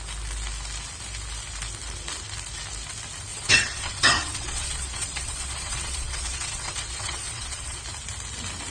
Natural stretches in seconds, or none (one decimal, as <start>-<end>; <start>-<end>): 0.0-3.3; 7.8-8.7